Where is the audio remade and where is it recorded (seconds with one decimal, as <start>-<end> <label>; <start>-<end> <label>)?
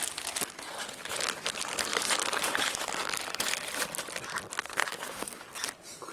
0.0-4.6 recorded; 4.6-5.4 remade; 5.4-6.1 recorded